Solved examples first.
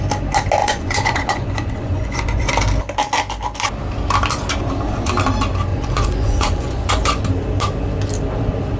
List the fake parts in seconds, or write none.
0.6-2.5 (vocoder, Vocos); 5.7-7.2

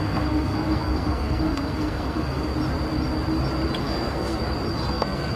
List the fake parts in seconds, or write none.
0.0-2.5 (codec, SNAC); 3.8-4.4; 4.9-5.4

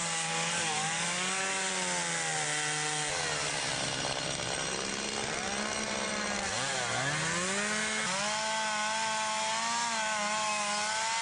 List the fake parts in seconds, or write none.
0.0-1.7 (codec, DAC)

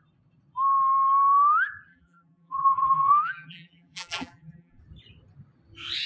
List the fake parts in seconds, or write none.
1.9-4.8 (vocoder, BigVGAN v2)

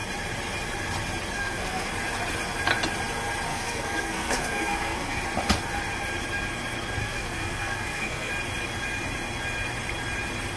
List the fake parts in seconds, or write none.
1.4-1.9 (codec, SNAC); 3.5-5.2; 7.0-8.3

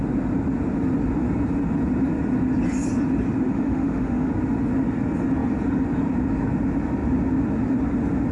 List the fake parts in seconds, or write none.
3.5-4.3 (autoencoder, DAC-VAE)